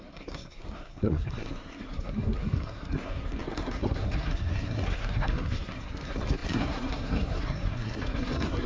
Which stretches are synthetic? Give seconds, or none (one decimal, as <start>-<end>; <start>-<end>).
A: 0.0-8.7